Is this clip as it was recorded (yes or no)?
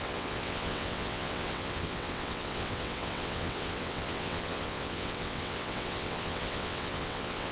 no